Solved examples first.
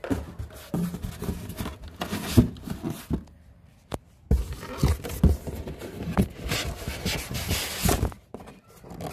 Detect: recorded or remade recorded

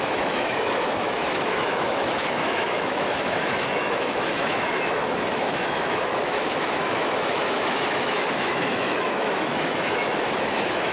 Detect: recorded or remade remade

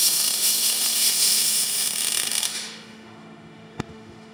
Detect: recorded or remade remade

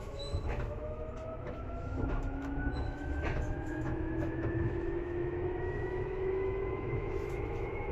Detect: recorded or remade remade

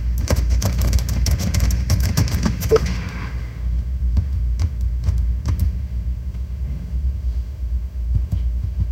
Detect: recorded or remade remade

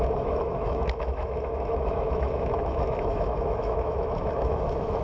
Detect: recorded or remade remade